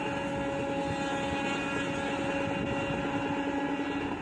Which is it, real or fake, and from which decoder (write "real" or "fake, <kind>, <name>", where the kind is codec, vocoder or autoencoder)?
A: real